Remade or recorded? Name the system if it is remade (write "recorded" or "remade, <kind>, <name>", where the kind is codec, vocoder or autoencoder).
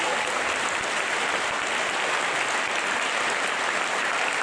recorded